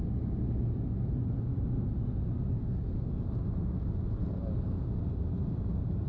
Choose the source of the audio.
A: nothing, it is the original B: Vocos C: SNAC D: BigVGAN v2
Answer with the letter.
A